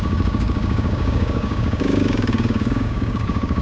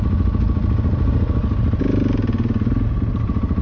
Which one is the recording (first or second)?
second